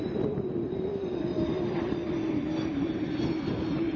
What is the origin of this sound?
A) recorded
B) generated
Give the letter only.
A